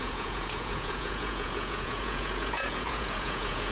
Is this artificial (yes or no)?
yes